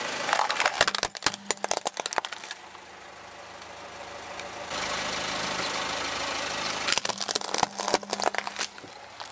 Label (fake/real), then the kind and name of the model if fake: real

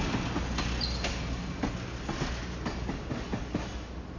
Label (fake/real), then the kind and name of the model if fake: real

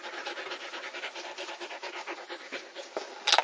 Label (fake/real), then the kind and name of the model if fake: real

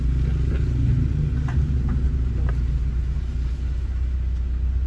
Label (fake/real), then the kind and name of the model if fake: real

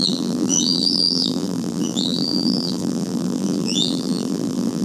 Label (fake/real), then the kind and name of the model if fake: fake, vocoder, BigVGAN v2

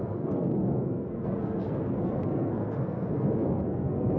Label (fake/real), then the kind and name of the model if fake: fake, codec, SNAC